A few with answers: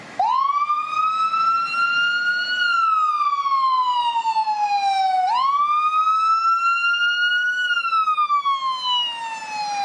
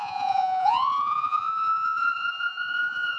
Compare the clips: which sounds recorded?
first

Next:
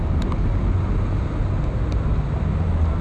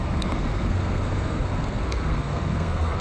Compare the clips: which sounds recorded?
first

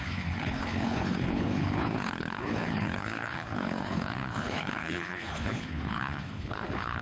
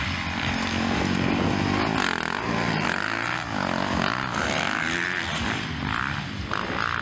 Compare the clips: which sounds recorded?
second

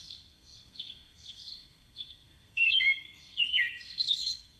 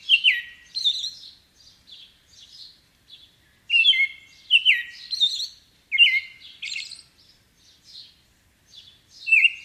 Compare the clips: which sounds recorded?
second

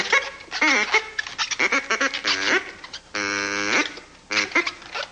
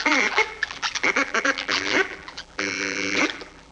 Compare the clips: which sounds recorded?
first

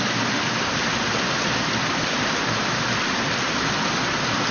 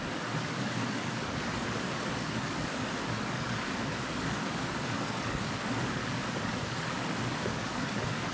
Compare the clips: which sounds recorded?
first